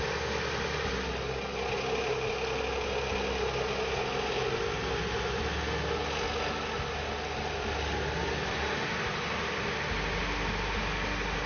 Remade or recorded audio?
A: recorded